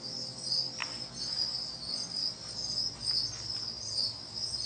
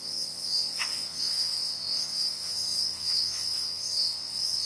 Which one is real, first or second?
first